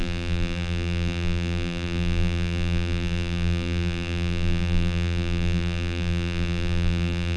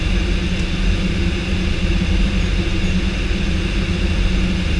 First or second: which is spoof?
first